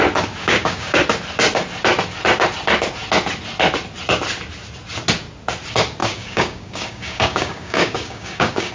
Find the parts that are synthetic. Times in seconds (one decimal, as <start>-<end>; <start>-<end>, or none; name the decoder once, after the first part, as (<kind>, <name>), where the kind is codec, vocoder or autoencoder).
0.4-1.0 (codec, DAC); 6.0-8.7